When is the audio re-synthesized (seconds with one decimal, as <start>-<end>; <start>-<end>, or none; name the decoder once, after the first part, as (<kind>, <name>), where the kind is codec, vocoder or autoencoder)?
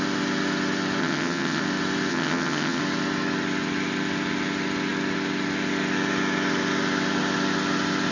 1.0-1.6 (vocoder, HiFi-GAN); 2.1-2.8